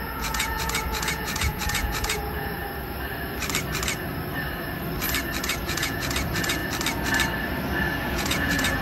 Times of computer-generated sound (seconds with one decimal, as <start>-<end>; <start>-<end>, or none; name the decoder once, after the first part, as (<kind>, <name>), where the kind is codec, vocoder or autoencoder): 0.0-2.6 (vocoder, Vocos); 5.4-6.6; 7.9-8.8